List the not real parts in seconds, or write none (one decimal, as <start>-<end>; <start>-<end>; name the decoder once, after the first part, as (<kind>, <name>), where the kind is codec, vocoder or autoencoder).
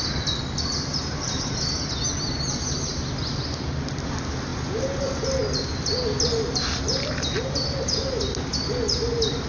none